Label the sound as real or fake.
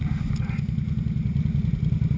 real